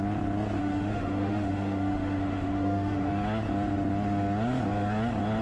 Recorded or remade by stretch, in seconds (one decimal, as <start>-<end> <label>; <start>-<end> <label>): 0.0-0.6 recorded; 0.6-3.1 remade; 3.1-5.4 recorded